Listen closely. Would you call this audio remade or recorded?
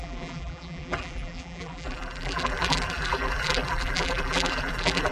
remade